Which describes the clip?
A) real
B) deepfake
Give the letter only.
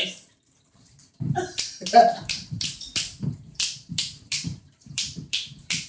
B